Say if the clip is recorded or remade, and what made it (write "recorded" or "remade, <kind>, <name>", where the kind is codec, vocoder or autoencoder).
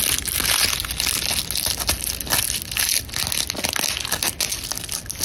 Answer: recorded